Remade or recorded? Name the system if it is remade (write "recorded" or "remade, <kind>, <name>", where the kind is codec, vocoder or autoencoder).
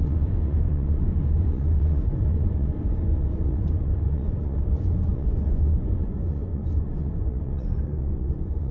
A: remade, vocoder, Vocos